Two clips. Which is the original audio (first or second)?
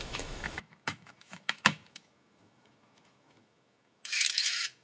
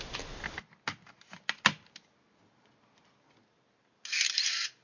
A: second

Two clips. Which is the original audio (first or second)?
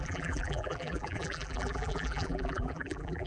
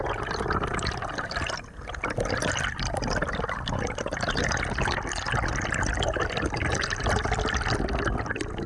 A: second